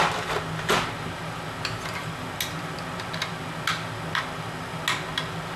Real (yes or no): yes